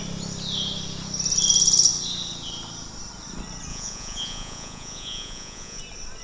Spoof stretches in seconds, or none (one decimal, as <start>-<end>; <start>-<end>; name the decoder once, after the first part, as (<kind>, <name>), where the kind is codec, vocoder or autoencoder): 3.7-5.8 (vocoder, Vocos)